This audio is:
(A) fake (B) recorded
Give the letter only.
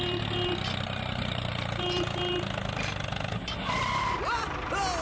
B